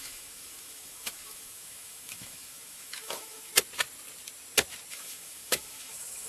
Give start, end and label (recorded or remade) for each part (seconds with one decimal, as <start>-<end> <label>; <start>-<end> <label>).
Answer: 0.0-3.5 remade; 3.5-4.9 recorded; 4.9-6.3 remade